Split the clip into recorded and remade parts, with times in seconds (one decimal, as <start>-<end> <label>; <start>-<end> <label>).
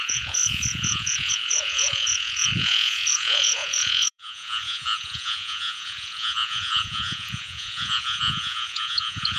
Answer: 0.0-9.4 remade